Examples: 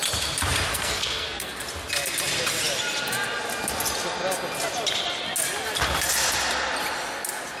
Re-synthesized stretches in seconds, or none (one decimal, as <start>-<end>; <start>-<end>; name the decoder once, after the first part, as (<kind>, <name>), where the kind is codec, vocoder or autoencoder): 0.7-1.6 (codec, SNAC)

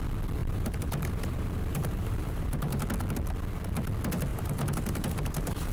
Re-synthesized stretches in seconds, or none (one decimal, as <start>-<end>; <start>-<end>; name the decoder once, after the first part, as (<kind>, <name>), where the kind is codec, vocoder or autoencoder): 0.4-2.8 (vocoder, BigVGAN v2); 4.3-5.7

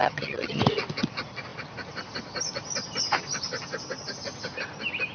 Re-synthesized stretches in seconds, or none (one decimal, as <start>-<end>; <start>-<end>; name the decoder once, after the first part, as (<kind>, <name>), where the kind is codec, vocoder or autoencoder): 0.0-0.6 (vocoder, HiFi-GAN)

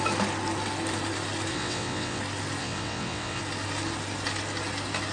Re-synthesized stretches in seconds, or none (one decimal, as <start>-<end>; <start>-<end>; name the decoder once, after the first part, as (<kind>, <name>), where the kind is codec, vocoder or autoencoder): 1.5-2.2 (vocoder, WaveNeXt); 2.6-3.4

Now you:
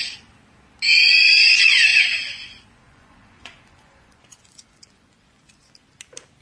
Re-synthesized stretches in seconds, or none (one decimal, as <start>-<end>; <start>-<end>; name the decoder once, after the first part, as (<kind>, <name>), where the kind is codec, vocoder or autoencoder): 1.0-1.5 (vocoder, Vocos); 1.9-5.7